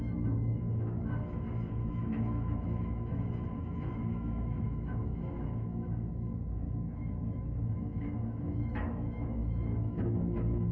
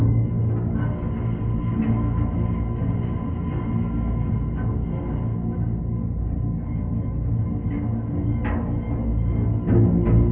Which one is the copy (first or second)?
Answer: first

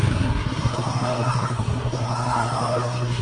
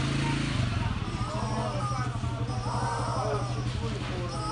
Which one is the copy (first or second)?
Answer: first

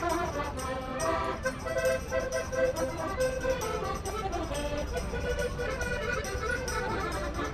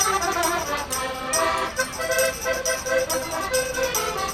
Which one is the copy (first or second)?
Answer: first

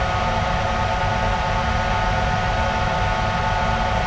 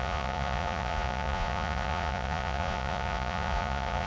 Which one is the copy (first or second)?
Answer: second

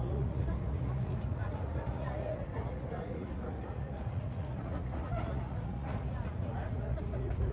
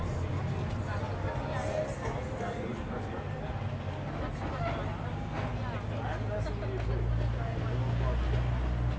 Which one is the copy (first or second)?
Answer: first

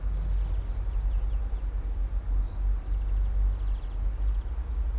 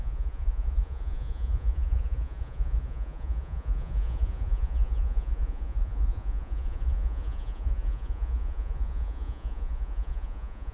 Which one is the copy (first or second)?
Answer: second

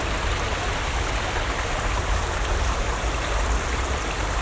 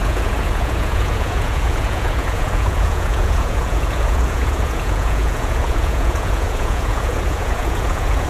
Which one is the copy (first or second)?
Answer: second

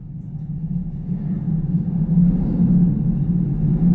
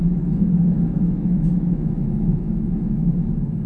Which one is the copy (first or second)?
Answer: second